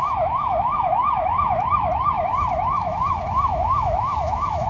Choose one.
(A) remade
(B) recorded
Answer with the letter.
A